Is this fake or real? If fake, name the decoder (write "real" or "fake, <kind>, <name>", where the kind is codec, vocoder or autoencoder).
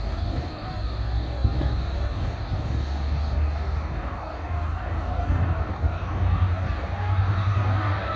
fake, codec, DAC